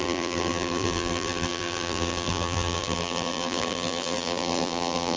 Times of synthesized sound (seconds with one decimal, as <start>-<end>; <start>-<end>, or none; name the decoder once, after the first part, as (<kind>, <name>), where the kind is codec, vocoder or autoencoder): 0.0-5.2 (vocoder, BigVGAN v2)